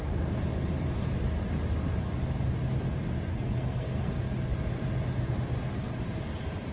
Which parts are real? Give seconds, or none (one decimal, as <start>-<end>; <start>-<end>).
0.0-3.3; 4.1-6.7